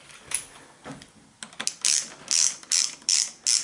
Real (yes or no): yes